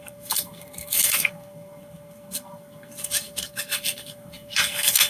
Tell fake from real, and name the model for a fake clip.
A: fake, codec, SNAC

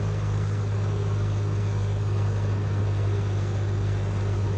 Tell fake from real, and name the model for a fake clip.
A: fake, codec, SNAC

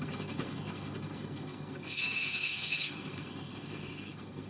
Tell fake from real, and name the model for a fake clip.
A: fake, codec, SNAC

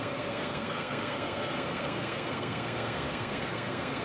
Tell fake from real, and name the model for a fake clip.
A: fake, codec, SNAC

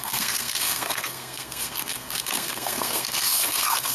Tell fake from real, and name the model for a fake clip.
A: fake, codec, SNAC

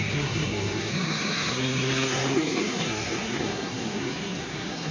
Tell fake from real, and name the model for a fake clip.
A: fake, codec, SNAC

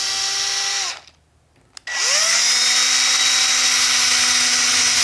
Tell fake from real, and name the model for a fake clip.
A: real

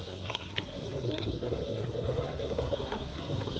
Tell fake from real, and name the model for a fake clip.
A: fake, codec, SNAC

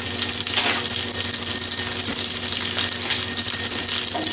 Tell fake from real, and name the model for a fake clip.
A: real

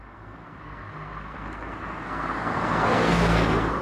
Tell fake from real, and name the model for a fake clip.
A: fake, codec, SNAC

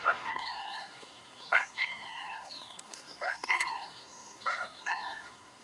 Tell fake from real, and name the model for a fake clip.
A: fake, codec, SNAC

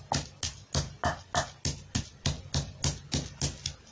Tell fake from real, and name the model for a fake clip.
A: real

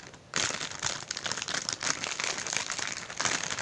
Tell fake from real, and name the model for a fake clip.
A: real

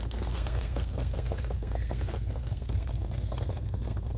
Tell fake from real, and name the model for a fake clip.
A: fake, codec, SNAC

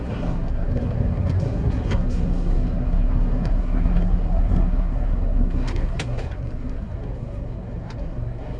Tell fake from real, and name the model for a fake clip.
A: fake, codec, SNAC